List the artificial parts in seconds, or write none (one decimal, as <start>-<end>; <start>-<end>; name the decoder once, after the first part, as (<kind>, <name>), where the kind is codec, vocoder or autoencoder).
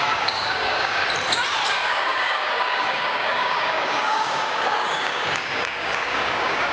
0.0-1.0 (codec, DAC); 1.7-6.7